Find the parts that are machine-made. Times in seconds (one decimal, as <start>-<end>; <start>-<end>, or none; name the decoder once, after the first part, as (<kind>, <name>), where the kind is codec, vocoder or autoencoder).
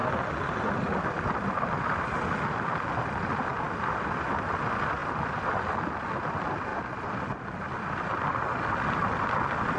5.0-5.6 (vocoder, BigVGAN v2); 6.7-7.6